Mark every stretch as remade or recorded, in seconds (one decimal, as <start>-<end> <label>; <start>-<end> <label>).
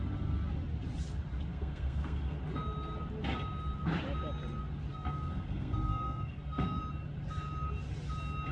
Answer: 0.0-1.5 recorded; 1.5-2.4 remade; 2.4-4.9 recorded; 4.9-6.8 remade; 6.8-8.5 recorded